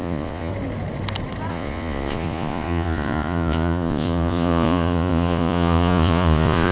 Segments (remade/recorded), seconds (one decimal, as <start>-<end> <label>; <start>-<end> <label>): 0.0-0.5 remade; 0.5-1.5 recorded; 1.5-6.7 remade

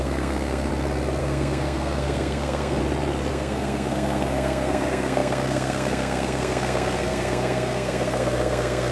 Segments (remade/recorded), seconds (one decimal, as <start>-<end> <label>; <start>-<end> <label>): 0.0-0.7 remade; 0.7-1.2 recorded; 1.2-2.8 remade; 2.8-3.3 recorded; 3.3-8.9 remade

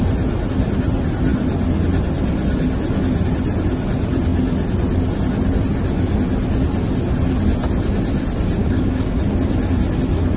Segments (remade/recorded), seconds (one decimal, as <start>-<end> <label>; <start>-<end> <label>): 0.0-8.6 recorded; 8.6-9.2 remade; 9.2-10.4 recorded

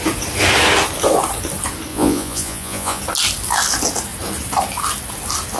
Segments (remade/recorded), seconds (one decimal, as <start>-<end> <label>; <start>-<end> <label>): 0.0-1.9 recorded; 1.9-3.0 remade; 3.0-5.6 recorded

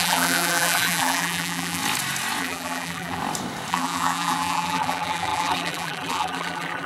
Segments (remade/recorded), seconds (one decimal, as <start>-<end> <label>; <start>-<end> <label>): 0.0-1.8 remade; 1.8-2.4 recorded; 2.4-3.2 remade; 3.2-3.7 recorded; 3.7-6.9 remade